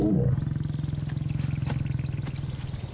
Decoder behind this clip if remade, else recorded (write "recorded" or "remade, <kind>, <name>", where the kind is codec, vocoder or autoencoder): recorded